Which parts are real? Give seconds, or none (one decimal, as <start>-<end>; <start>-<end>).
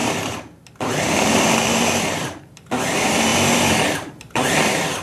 none